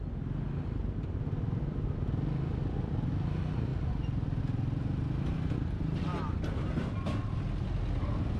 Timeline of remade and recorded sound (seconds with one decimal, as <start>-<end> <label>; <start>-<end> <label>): 0.0-8.4 recorded